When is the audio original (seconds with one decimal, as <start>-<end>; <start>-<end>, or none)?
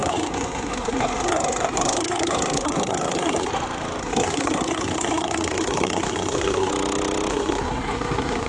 3.5-4.0; 6.7-7.3